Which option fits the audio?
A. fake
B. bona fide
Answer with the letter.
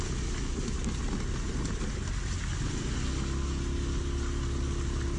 B